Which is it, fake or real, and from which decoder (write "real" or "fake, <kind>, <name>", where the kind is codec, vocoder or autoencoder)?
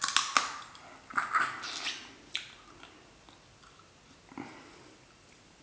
real